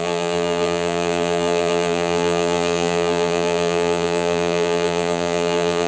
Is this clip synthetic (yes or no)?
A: yes